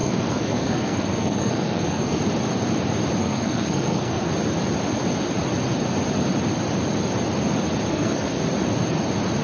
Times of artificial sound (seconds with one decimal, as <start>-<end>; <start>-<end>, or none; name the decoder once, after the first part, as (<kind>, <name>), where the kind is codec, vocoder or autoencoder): 0.0-2.2 (codec, SNAC); 3.2-4.3; 7.9-8.4